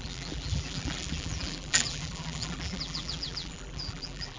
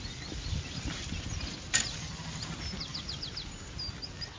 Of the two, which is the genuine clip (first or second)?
second